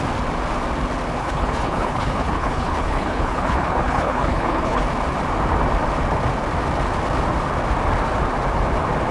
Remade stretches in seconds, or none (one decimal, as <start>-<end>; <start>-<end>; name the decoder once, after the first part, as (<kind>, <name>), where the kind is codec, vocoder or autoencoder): 1.2-4.8 (codec, HILCodec)